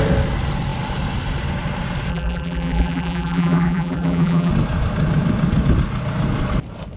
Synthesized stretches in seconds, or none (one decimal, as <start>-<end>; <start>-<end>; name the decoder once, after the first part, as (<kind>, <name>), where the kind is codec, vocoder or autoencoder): 2.1-4.5 (vocoder, BigVGAN v2)

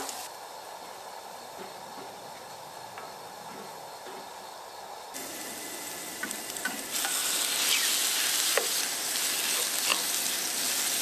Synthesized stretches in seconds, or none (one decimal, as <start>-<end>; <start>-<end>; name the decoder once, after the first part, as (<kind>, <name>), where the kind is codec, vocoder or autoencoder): none

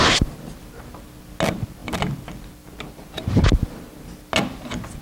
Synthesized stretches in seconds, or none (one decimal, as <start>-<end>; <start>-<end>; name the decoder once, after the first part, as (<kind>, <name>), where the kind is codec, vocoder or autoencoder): none

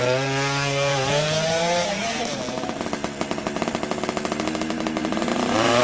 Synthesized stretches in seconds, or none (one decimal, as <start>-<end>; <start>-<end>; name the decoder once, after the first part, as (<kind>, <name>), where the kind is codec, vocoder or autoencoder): 0.9-2.4 (vocoder, BigVGAN v2); 5.0-5.8

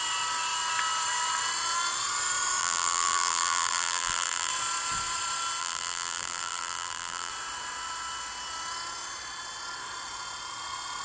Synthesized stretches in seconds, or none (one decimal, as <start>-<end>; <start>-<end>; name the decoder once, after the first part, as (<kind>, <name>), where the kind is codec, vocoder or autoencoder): 2.6-4.5 (vocoder, BigVGAN v2); 5.6-7.3

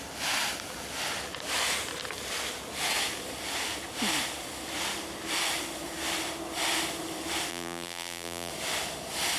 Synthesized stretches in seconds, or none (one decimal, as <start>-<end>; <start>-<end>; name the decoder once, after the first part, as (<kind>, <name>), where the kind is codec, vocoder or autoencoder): 7.5-8.5 (vocoder, BigVGAN v2)

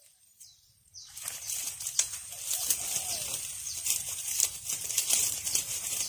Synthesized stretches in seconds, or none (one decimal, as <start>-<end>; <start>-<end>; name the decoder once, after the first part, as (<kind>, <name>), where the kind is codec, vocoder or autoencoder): 0.0-2.2 (vocoder, BigVGAN v2); 3.8-6.1